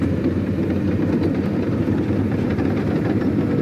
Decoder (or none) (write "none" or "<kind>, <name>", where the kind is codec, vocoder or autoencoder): none